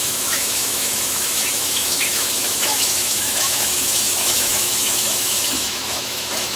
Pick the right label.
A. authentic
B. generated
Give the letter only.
B